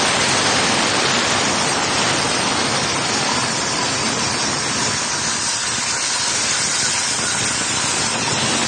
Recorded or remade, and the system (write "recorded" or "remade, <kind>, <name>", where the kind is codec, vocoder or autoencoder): recorded